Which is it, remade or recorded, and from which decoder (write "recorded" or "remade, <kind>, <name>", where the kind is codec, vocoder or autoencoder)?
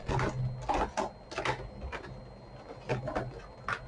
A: recorded